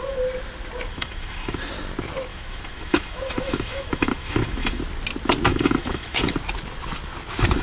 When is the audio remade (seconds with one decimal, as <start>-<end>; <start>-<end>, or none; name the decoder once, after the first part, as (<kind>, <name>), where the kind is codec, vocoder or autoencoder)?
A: 0.9-1.7 (autoencoder, DAC-VAE); 2.3-4.8; 5.5-6.3